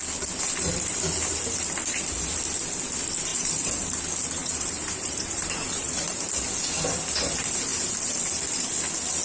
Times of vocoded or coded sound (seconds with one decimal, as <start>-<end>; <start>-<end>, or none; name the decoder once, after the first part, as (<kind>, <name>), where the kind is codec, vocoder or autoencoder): 3.3-4.0 (vocoder, BigVGAN v2); 4.4-6.3